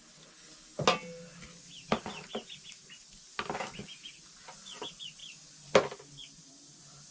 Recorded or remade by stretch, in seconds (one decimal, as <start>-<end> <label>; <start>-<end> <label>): 0.0-7.1 recorded